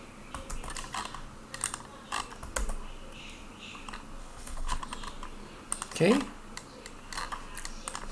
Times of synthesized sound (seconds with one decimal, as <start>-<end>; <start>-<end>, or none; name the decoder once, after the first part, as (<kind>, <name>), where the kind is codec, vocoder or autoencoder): 4.2-4.8 (codec, HILCodec)